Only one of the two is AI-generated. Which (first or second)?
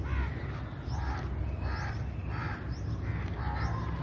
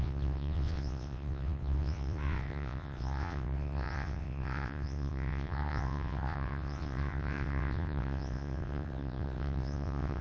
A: second